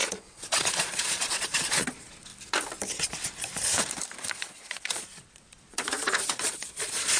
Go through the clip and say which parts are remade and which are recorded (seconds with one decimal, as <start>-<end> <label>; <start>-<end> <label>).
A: 0.0-2.3 remade; 2.3-4.3 recorded; 4.3-7.2 remade

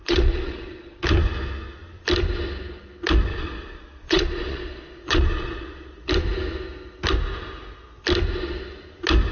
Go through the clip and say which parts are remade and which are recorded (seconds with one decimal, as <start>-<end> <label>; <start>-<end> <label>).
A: 0.0-1.0 remade; 1.0-3.3 recorded; 3.3-6.1 remade; 6.1-9.3 recorded

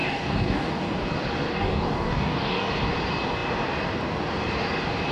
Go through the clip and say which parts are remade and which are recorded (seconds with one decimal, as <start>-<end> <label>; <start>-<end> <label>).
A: 0.0-0.8 remade; 0.8-1.5 recorded; 1.5-2.7 remade; 2.7-5.1 recorded

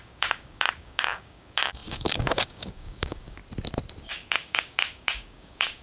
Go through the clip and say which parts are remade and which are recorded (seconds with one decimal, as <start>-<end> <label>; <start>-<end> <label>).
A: 0.0-3.4 remade; 3.4-4.0 recorded; 4.0-5.8 remade